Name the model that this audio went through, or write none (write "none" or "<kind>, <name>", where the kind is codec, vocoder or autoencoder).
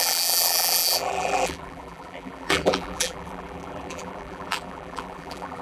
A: vocoder, BigVGAN v2